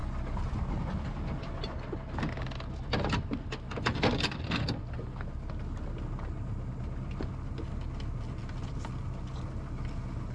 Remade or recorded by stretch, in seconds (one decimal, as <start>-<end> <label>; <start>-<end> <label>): 0.0-10.3 recorded